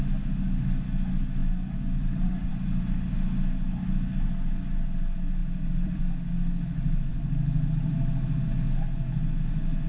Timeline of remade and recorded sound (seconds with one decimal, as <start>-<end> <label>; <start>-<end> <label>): 0.0-1.4 recorded; 1.4-2.5 remade; 2.5-5.4 recorded; 5.4-6.0 remade; 6.0-7.1 recorded; 7.1-7.7 remade; 7.7-9.9 recorded